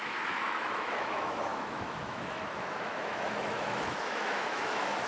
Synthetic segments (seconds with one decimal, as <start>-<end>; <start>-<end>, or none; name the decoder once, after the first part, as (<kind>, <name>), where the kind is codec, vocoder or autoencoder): 0.0-5.1 (autoencoder, DAC-VAE)